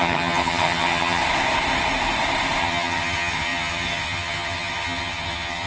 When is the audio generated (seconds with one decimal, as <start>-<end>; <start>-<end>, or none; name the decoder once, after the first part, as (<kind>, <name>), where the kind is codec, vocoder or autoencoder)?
0.0-1.2 (vocoder, HiFi-GAN); 2.6-5.7